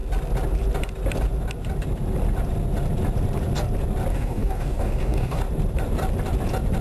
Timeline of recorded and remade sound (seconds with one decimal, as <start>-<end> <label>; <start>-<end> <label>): 0.0-4.1 recorded; 4.1-5.4 remade; 5.4-6.8 recorded